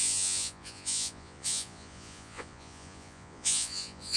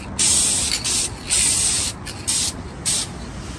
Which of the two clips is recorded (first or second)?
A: second